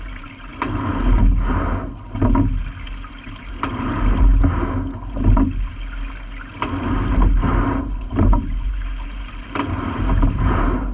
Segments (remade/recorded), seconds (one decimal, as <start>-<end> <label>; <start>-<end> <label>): 0.0-0.5 remade; 0.5-3.5 recorded; 3.5-4.3 remade; 4.3-7.8 recorded; 7.8-10.9 remade